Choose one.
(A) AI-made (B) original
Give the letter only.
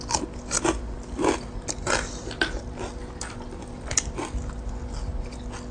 B